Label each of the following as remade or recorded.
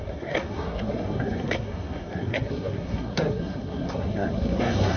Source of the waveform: remade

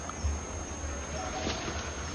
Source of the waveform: recorded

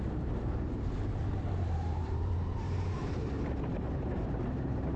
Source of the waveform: remade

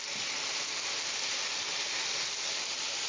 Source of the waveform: recorded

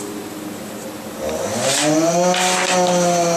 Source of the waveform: recorded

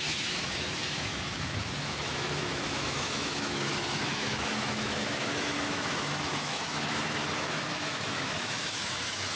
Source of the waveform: remade